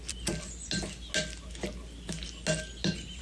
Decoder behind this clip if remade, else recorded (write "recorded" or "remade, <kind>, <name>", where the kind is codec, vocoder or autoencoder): recorded